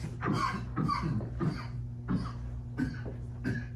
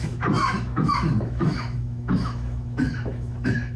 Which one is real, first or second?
first